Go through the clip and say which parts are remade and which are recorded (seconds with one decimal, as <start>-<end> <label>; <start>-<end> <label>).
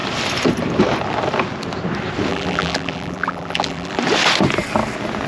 0.0-2.3 recorded; 2.3-4.0 remade; 4.0-5.3 recorded